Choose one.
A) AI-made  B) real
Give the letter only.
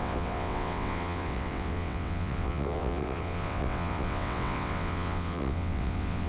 A